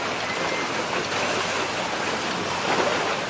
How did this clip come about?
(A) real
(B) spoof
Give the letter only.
A